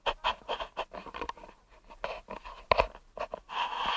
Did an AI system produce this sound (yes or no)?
no